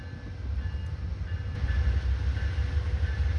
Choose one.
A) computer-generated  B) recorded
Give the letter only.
B